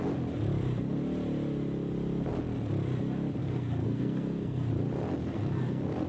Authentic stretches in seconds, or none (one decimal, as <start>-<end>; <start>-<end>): 0.0-3.4; 4.7-5.2